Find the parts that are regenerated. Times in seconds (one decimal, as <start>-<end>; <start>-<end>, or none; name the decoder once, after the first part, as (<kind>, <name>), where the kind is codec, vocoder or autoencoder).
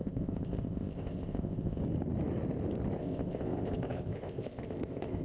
0.0-1.8 (codec, ZipCodec); 3.0-5.2